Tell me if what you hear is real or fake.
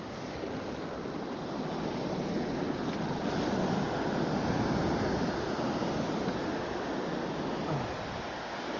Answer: real